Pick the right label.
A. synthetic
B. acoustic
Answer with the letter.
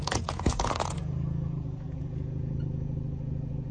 A